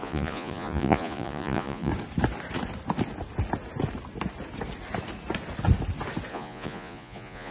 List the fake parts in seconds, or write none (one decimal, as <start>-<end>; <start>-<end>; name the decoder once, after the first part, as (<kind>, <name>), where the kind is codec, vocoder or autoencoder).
0.0-1.9 (vocoder, Vocos); 6.3-7.5